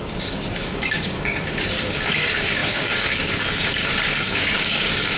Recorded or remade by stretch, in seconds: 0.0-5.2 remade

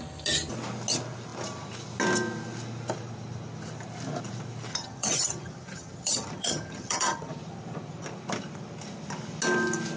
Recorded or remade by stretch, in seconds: 0.0-4.7 recorded; 4.7-7.3 remade; 7.3-10.0 recorded

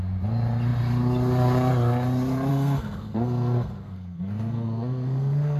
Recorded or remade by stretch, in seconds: 0.0-2.5 recorded; 2.5-5.6 remade

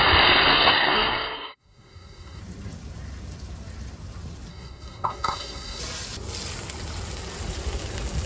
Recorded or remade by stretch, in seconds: 0.0-0.5 recorded; 0.5-2.4 remade; 2.4-4.5 recorded; 4.5-5.8 remade; 5.8-8.3 recorded

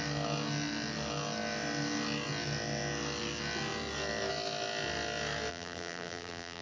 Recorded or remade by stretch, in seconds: 0.0-5.5 recorded; 5.5-6.6 remade

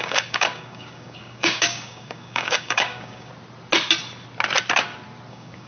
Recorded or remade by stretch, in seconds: 0.0-3.3 remade; 3.3-5.3 recorded; 5.3-5.7 remade